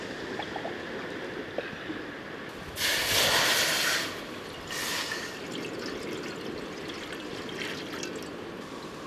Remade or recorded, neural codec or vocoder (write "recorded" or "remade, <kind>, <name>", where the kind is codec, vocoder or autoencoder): recorded